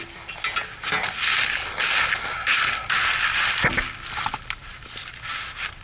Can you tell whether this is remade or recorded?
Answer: recorded